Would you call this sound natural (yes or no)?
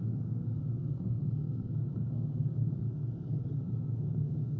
no